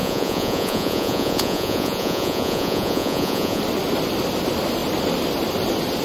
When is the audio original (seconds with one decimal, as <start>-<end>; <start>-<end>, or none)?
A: 3.6-6.0